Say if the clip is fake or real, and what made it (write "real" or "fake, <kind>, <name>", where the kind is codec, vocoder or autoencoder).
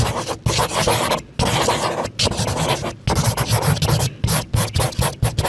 real